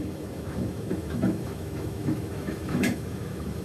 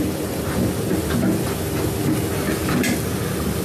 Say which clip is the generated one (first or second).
first